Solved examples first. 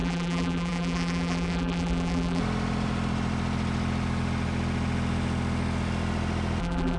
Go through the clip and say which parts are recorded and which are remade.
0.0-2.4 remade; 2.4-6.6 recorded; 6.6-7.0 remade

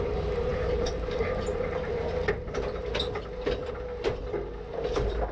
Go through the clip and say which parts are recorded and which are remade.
0.0-5.3 recorded